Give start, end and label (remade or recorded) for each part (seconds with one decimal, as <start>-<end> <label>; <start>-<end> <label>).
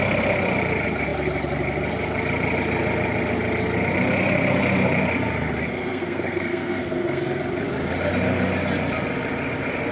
0.0-5.6 recorded; 5.6-7.4 remade; 7.4-9.9 recorded